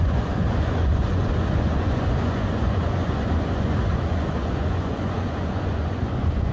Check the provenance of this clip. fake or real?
fake